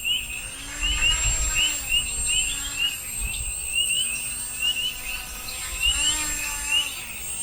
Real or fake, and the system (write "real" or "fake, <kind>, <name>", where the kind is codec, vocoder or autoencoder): real